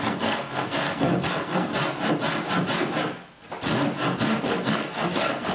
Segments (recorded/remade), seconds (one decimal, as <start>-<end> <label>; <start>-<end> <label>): 0.0-1.7 remade; 1.7-4.4 recorded; 4.4-5.5 remade